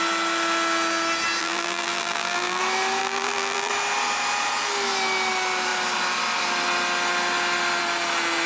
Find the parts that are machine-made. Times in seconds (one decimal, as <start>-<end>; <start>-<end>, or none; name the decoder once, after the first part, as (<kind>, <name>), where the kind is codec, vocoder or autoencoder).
1.4-2.6 (vocoder, BigVGAN v2); 3.0-3.7